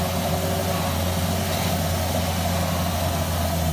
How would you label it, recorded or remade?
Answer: recorded